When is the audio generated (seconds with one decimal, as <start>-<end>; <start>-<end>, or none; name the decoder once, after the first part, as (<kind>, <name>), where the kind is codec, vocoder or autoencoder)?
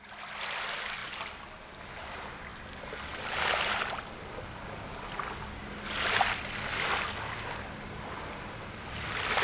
none